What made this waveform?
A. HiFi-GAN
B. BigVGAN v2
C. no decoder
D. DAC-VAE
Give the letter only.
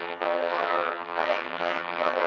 A